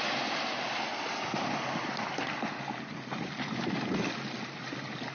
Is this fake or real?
real